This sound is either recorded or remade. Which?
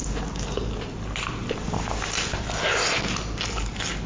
recorded